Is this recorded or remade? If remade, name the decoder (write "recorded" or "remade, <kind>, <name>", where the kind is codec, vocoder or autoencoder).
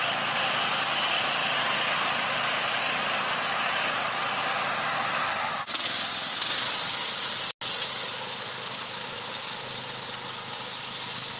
recorded